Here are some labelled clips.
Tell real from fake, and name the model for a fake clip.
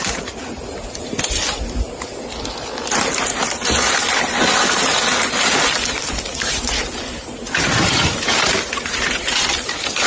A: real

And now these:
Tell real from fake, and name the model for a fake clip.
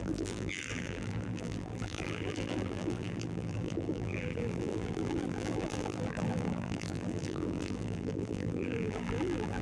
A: fake, vocoder, BigVGAN v2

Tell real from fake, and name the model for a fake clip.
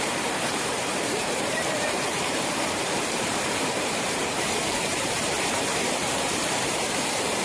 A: fake, vocoder, BigVGAN v2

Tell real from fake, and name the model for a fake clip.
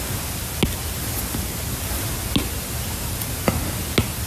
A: real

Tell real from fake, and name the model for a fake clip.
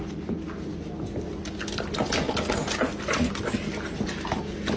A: real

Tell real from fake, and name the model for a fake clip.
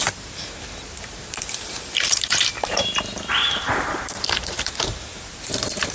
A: fake, vocoder, BigVGAN v2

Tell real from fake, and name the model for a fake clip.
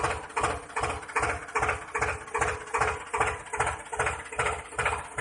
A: real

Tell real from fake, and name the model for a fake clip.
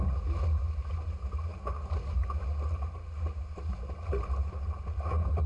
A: real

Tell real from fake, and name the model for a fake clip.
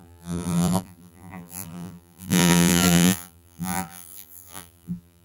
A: fake, vocoder, BigVGAN v2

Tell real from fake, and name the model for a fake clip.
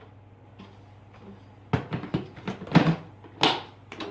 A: real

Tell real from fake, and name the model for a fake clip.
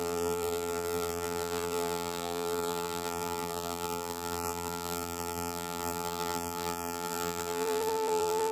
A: fake, vocoder, BigVGAN v2